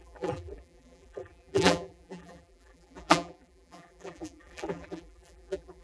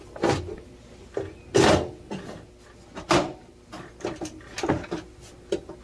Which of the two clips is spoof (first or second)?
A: first